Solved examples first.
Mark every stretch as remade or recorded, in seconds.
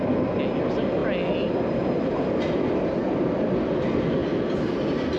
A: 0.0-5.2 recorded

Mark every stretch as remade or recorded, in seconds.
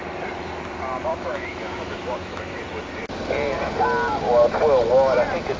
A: 0.0-1.1 recorded; 1.1-2.6 remade; 2.6-5.6 recorded